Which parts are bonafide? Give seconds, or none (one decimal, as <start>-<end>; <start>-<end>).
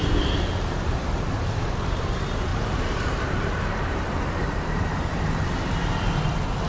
1.0-2.5; 5.2-6.7